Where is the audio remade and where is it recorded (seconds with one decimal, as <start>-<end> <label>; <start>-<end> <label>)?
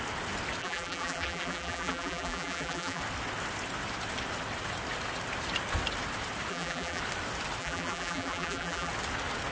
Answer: 0.0-0.6 recorded; 0.6-3.0 remade; 3.0-6.5 recorded; 6.5-7.0 remade; 7.0-7.6 recorded; 7.6-8.9 remade; 8.9-9.5 recorded